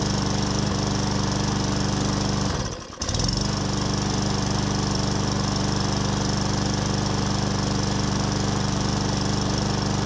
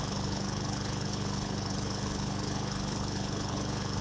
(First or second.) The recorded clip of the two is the first